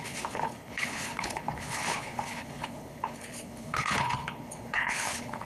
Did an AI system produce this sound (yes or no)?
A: yes